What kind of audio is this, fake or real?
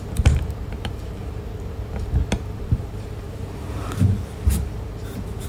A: fake